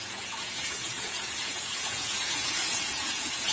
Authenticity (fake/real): fake